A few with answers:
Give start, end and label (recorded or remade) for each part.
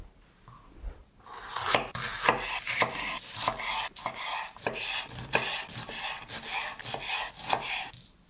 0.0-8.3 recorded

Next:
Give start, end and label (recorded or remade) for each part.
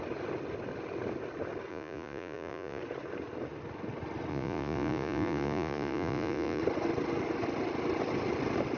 0.0-1.7 recorded; 1.7-2.8 remade; 2.8-4.3 recorded; 4.3-6.6 remade; 6.6-8.8 recorded